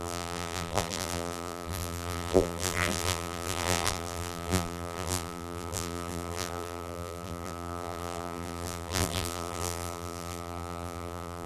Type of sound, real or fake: fake